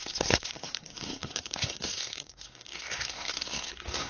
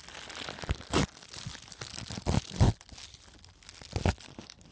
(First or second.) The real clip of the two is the second